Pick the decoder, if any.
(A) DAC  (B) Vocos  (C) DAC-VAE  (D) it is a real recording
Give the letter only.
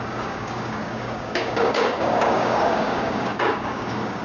A